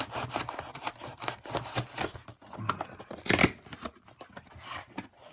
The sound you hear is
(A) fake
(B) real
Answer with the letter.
B